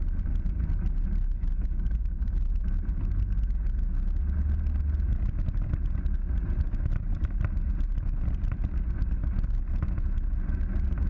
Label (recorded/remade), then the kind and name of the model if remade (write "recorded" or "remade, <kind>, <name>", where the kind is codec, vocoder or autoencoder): recorded